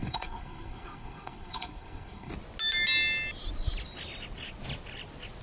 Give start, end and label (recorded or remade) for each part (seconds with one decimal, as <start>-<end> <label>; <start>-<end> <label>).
0.0-2.3 remade; 2.3-5.4 recorded